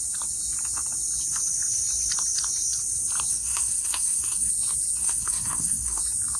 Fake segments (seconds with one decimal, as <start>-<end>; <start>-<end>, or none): 3.3-4.5; 5.0-6.0